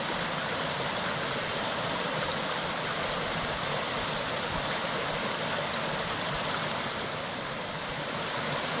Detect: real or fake real